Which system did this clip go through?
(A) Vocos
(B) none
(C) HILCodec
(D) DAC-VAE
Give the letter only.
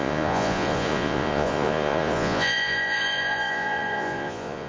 A